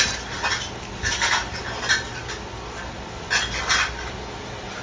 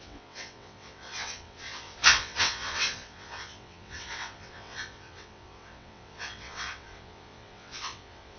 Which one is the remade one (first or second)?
second